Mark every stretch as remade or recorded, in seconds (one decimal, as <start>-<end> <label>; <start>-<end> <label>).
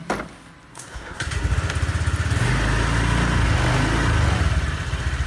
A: 0.0-0.7 recorded; 0.7-1.3 remade; 1.3-5.3 recorded